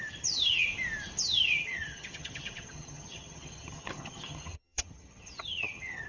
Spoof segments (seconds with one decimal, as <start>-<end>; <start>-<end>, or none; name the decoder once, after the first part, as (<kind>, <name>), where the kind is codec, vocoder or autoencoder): 0.0-0.7 (vocoder, HiFi-GAN); 1.2-6.1